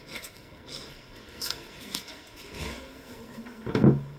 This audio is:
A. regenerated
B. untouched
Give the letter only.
A